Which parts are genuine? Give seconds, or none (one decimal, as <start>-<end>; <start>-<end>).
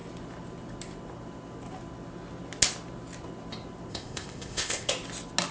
0.0-3.9; 4.9-5.5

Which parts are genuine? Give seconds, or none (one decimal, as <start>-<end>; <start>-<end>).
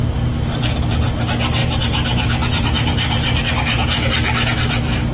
0.9-1.6; 3.5-5.1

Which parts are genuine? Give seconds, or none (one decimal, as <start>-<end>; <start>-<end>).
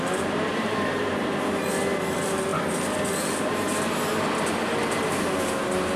0.0-0.5; 1.2-6.0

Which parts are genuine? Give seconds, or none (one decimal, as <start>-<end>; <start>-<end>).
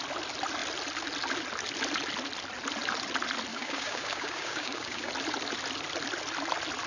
0.0-3.5; 5.1-6.9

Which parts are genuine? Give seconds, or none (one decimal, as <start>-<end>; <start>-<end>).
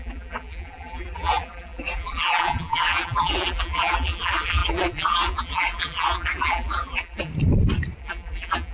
7.3-8.0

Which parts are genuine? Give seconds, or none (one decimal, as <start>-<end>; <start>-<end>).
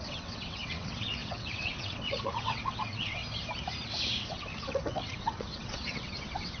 3.2-4.2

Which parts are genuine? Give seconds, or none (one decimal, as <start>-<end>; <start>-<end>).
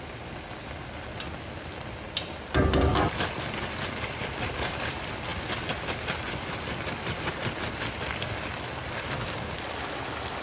0.0-10.4